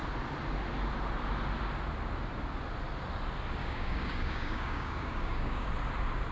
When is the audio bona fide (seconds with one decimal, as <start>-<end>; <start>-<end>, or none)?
0.0-3.6; 5.7-6.3